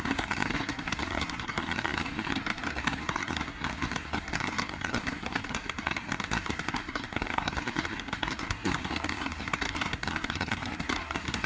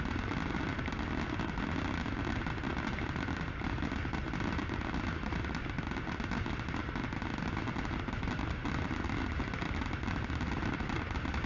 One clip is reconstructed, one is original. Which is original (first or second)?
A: second